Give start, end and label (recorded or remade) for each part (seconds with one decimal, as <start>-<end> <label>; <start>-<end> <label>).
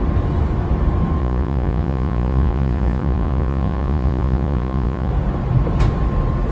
0.0-1.2 recorded; 1.2-5.1 remade; 5.1-6.5 recorded